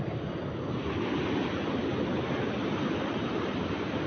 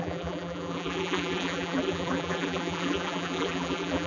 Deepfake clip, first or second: second